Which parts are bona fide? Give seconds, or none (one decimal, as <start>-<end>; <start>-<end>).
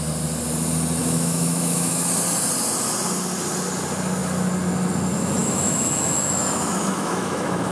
0.0-1.0; 2.1-5.4